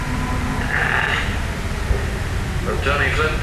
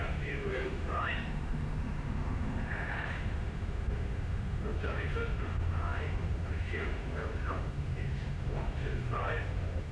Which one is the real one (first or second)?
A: first